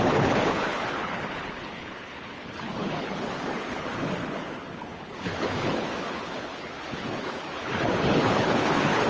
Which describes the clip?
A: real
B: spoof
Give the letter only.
B